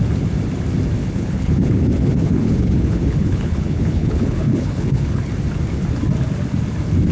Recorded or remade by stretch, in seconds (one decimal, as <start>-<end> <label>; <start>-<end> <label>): 0.0-1.0 recorded; 1.0-5.3 remade; 5.3-7.1 recorded